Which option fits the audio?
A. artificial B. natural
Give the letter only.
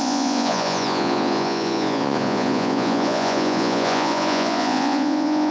A